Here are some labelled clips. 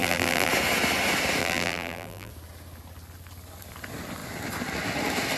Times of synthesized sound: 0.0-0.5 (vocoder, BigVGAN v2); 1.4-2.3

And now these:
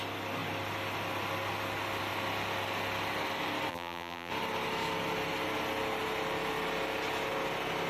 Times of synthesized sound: 3.7-4.3 (vocoder, BigVGAN v2)

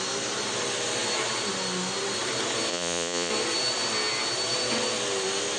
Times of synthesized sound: 2.7-3.3 (vocoder, Vocos)

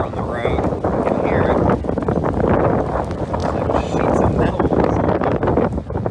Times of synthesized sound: none

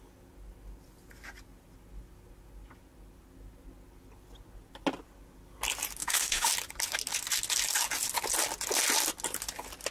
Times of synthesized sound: 6.0-6.5 (autoencoder, DAC-VAE)